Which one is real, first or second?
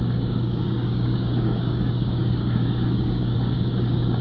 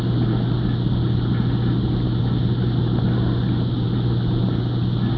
second